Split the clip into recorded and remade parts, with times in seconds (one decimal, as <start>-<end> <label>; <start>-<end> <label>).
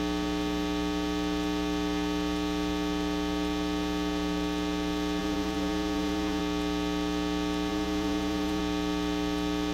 0.0-5.2 recorded; 5.2-6.4 remade; 6.4-7.7 recorded; 7.7-8.6 remade; 8.6-9.7 recorded